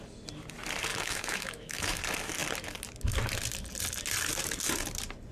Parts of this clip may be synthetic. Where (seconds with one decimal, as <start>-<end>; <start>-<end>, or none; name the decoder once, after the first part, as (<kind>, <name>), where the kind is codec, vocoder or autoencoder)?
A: 0.9-2.0 (autoencoder, DAC-VAE)